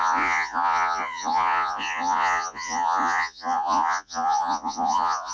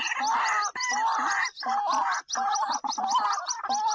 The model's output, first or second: first